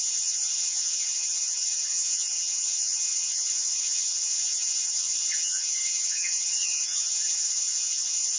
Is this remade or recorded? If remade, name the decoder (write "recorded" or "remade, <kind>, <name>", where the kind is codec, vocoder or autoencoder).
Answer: remade, vocoder, HiFi-GAN